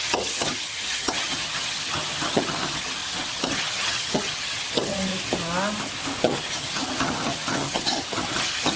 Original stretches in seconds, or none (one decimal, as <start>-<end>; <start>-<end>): 5.1-6.2